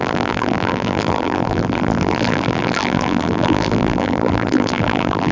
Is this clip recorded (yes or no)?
no